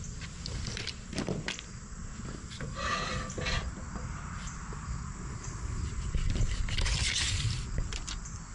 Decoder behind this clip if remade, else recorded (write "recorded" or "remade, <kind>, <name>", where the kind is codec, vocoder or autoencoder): remade, vocoder, BigVGAN v2